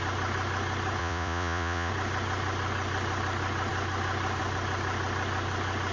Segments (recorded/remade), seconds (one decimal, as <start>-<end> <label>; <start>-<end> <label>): 0.0-1.0 recorded; 1.0-1.9 remade; 1.9-5.9 recorded